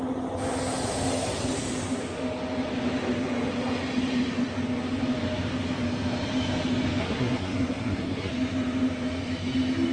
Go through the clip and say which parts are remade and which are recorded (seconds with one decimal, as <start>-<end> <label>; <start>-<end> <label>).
0.0-7.0 recorded; 7.0-8.3 remade; 8.3-9.9 recorded